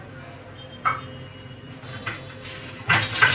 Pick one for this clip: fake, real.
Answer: real